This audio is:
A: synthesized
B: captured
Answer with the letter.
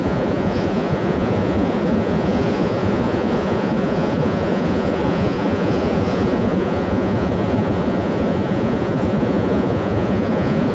A